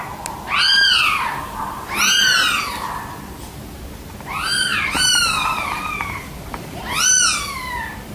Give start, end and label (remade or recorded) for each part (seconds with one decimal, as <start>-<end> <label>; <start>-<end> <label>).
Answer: 0.0-0.7 recorded; 0.7-1.3 remade; 1.3-4.7 recorded; 4.7-7.0 remade; 7.0-8.1 recorded